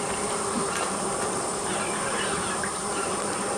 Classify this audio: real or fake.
fake